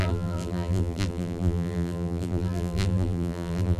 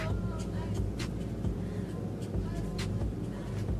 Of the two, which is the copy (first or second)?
first